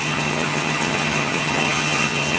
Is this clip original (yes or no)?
no